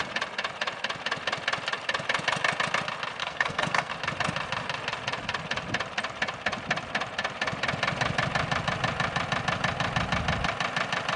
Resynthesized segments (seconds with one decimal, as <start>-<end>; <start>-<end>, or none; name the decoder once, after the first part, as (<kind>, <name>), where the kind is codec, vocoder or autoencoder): 3.2-3.9 (codec, SNAC)